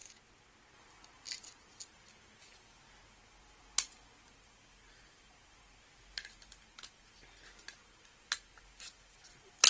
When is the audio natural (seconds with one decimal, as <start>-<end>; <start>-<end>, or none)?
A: 0.0-9.7